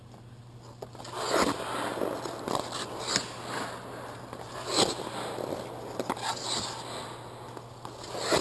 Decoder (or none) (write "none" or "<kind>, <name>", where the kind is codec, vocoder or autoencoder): none